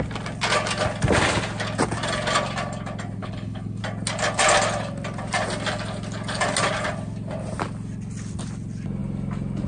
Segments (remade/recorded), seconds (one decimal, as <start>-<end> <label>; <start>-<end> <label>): 0.0-3.2 recorded; 3.2-3.8 remade; 3.8-9.7 recorded